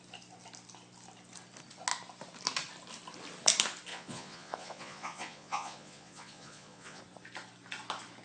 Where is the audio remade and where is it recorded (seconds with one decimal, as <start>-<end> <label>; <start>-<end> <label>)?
0.0-3.9 recorded; 3.9-7.0 remade; 7.0-8.2 recorded